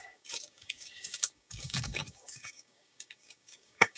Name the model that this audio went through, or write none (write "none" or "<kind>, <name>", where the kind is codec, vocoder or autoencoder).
codec, DAC